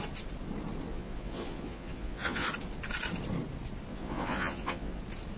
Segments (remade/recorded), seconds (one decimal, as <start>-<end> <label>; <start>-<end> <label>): 0.0-0.9 recorded; 0.9-2.5 remade; 2.5-3.9 recorded; 3.9-5.0 remade; 5.0-5.4 recorded